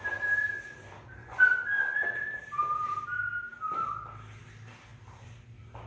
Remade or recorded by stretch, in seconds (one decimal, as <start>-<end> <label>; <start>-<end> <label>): 0.0-1.2 recorded; 1.2-1.8 remade; 1.8-5.9 recorded